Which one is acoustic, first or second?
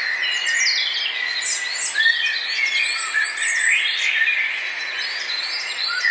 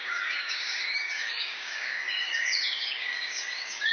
first